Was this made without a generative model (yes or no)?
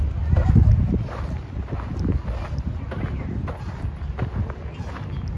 yes